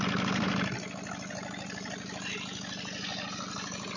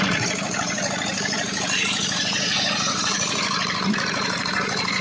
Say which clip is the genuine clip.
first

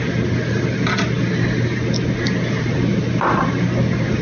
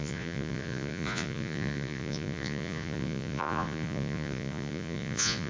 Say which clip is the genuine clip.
first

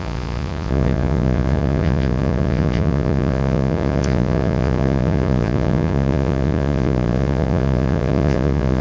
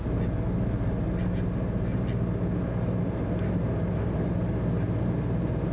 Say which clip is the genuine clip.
second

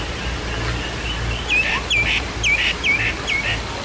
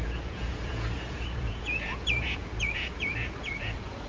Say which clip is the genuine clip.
first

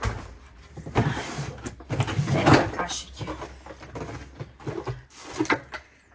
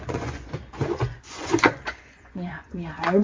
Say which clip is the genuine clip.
first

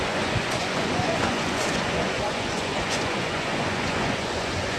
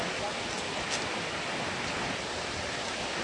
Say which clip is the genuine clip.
second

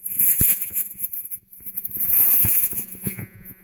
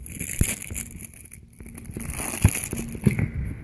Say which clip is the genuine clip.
second